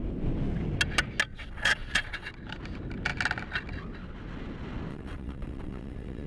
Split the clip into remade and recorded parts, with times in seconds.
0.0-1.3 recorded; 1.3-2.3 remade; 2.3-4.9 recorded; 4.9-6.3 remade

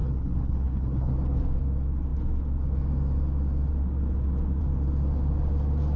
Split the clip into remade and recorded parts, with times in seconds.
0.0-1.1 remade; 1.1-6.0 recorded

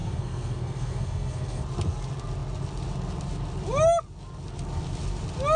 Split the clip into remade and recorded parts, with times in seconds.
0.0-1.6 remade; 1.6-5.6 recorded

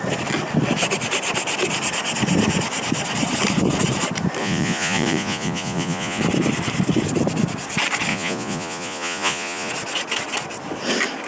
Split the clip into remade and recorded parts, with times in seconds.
0.0-4.4 recorded; 4.4-6.2 remade; 6.2-8.1 recorded; 8.1-9.7 remade; 9.7-11.3 recorded

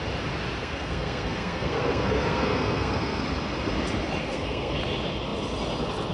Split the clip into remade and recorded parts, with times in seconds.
0.0-0.6 recorded; 0.6-3.2 remade; 3.2-4.2 recorded; 4.2-4.8 remade; 4.8-6.1 recorded

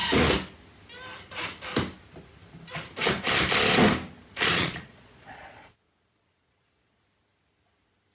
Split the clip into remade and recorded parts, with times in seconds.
0.0-4.5 recorded; 4.5-7.0 remade; 7.0-8.1 recorded

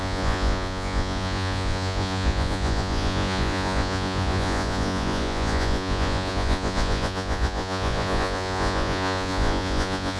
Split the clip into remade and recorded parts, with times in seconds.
0.0-10.2 remade

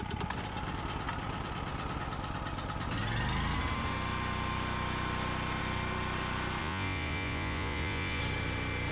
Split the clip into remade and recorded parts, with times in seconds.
0.0-6.6 recorded; 6.6-8.2 remade; 8.2-8.9 recorded